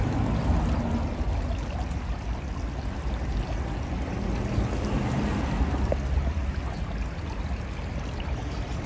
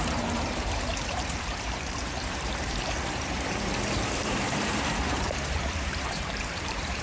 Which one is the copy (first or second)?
second